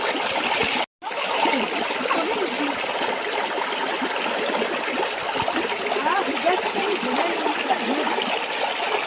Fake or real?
real